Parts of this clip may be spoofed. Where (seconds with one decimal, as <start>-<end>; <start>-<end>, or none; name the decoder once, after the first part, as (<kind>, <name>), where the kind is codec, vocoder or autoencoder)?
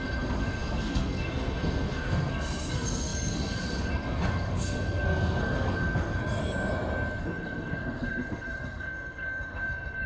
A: 0.0-6.4 (codec, SNAC); 7.2-10.1